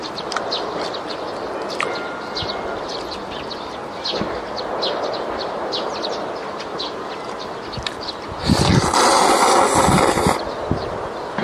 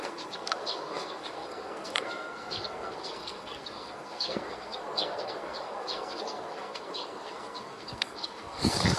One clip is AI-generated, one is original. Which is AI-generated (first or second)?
second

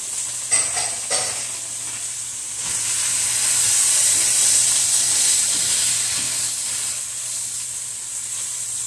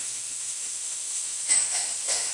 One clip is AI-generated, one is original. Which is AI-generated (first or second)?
second